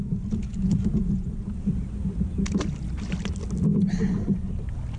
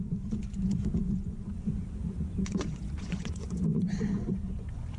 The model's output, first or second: second